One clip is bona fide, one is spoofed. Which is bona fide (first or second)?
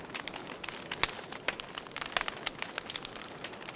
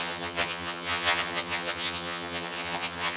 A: first